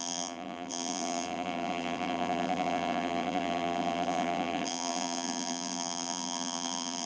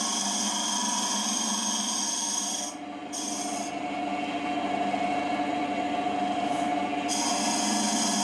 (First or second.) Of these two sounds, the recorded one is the second